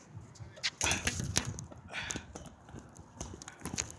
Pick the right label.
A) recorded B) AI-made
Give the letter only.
A